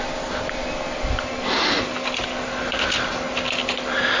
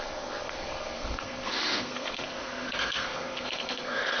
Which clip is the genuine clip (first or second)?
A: first